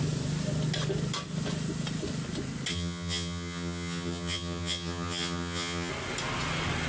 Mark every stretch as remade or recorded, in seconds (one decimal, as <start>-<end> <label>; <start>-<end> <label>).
0.0-2.7 recorded; 2.7-5.9 remade; 5.9-6.9 recorded